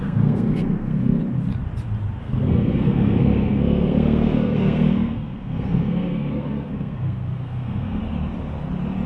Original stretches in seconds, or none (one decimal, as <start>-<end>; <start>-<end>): 1.2-2.2; 8.0-9.1